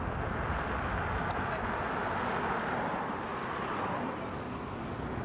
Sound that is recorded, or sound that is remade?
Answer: recorded